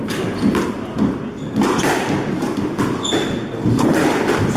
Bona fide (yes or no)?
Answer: yes